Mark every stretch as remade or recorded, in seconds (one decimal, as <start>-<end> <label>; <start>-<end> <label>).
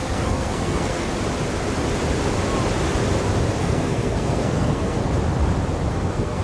0.0-1.1 remade; 1.1-3.6 recorded; 3.6-5.0 remade; 5.0-5.9 recorded; 5.9-6.4 remade